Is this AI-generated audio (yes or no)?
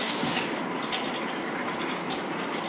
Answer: no